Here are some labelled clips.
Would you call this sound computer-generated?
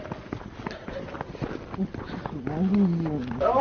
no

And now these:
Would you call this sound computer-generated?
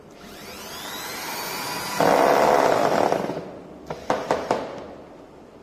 no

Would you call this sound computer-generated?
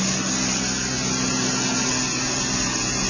no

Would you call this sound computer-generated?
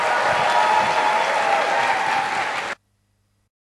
no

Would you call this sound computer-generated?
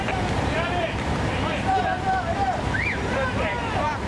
yes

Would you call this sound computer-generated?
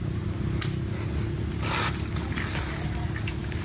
no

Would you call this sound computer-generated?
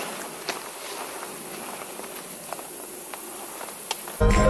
no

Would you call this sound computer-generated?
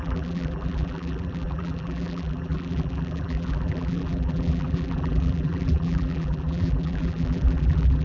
yes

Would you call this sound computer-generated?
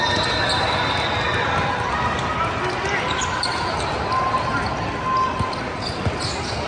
no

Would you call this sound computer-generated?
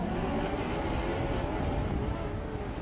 no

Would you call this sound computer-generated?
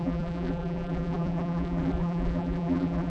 yes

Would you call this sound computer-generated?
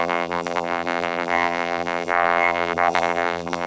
yes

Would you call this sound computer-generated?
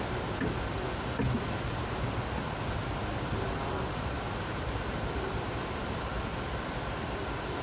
no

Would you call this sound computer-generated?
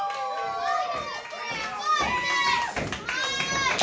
no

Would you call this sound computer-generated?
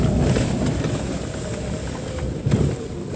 no